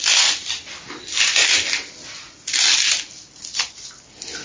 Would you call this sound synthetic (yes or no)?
no